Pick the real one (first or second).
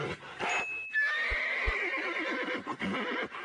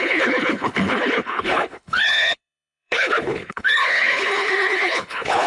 first